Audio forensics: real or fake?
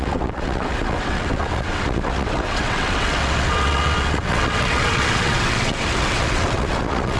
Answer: fake